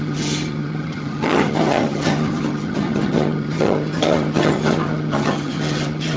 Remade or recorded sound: remade